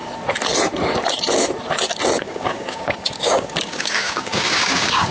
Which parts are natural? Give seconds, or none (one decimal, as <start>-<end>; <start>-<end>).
0.0-2.2